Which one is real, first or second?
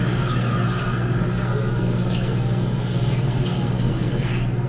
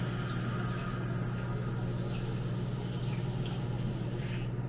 second